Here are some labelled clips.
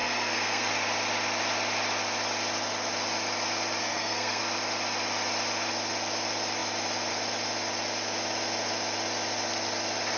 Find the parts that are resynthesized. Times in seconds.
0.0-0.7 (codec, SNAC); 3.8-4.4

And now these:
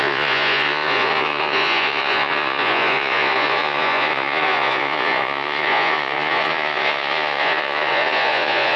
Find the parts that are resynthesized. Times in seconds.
0.0-8.8 (vocoder, Vocos)

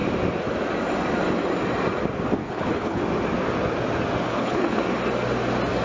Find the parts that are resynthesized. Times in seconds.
2.4-3.0 (codec, HILCodec); 4.3-4.8